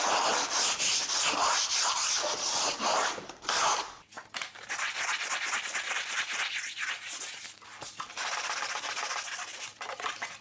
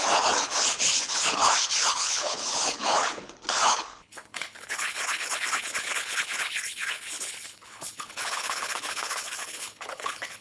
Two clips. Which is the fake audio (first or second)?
second